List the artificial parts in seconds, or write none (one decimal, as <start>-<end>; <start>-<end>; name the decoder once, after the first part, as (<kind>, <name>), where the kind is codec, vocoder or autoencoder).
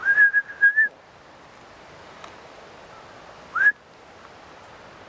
none